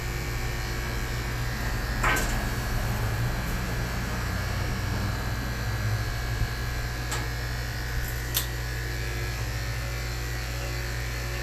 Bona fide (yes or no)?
yes